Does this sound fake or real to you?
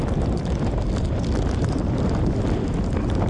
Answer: real